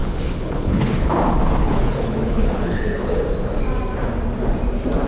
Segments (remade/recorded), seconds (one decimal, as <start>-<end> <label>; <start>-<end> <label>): 0.0-1.2 remade; 1.2-1.6 recorded; 1.6-3.1 remade; 3.1-5.1 recorded